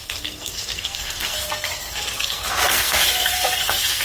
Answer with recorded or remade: remade